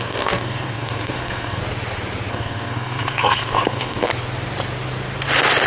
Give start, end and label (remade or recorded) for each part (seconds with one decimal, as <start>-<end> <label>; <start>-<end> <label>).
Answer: 0.0-1.6 remade; 1.6-2.3 recorded; 2.3-4.1 remade; 4.1-5.7 recorded